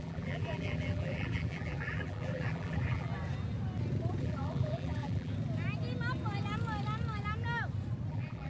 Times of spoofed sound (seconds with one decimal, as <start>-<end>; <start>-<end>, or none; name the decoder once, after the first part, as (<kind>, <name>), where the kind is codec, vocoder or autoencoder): 0.0-3.1 (vocoder, BigVGAN v2); 4.2-5.3; 8.1-8.5